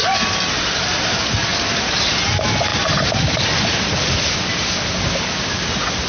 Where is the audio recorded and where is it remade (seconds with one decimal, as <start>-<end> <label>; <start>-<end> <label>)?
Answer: 0.0-6.1 recorded